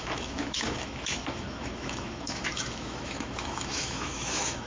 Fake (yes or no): yes